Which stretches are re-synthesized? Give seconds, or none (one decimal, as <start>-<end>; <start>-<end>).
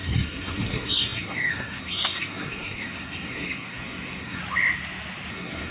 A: 0.0-4.4; 5.3-5.7